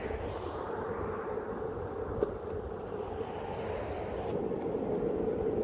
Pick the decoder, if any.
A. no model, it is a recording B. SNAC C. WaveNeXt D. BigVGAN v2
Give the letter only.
A